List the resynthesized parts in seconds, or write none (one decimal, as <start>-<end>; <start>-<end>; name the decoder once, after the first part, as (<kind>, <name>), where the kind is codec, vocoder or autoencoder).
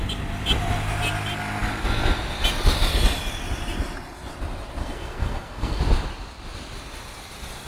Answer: 4.8-5.8 (codec, SNAC)